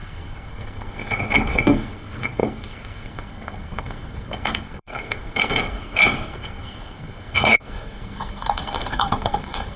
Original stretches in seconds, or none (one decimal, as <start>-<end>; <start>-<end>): none